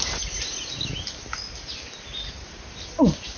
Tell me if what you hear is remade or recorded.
recorded